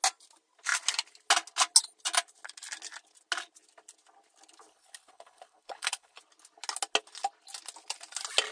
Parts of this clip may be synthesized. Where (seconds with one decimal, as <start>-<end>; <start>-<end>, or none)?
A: 4.7-6.2